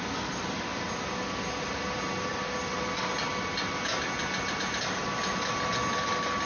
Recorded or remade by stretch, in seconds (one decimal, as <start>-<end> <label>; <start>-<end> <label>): 0.0-6.5 recorded